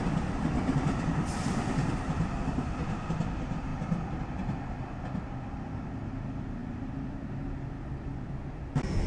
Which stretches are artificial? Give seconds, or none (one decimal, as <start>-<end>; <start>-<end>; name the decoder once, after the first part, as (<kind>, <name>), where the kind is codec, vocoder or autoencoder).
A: 6.6-7.4 (vocoder, BigVGAN v2)